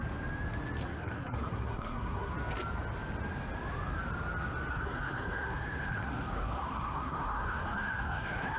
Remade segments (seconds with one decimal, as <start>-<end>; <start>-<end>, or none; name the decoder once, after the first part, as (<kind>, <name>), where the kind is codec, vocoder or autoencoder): 0.8-2.3 (codec, SNAC); 4.7-8.6